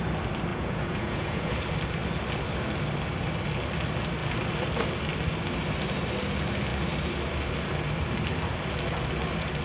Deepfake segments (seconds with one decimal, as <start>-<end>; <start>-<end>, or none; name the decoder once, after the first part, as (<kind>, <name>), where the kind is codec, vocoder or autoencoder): 0.5-1.5 (vocoder, Vocos)